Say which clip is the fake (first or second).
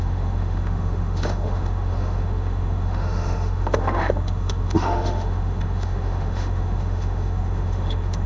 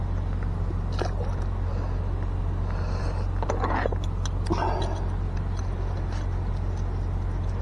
first